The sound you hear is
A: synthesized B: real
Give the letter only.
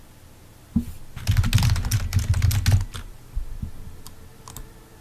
B